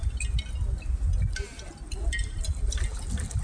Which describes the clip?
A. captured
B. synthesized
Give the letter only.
A